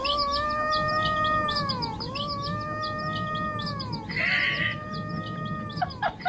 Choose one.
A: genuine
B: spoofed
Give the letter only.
A